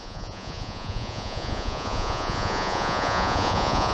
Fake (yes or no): yes